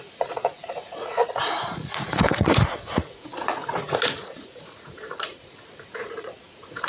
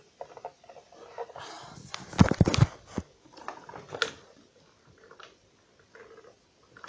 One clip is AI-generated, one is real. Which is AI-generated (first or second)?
first